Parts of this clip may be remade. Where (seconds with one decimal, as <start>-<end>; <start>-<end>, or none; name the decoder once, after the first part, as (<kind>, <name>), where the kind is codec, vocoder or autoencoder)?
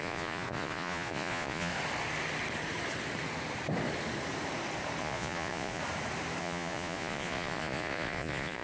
0.0-1.7 (vocoder, Vocos); 5.0-5.8; 6.4-8.6